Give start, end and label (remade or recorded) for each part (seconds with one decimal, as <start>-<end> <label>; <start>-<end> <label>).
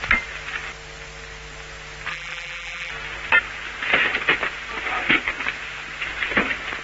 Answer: 0.0-2.1 recorded; 2.1-2.9 remade; 2.9-6.8 recorded